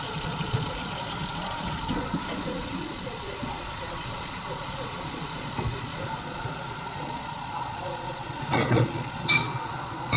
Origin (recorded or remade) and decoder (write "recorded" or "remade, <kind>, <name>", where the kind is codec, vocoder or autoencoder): remade, vocoder, Vocos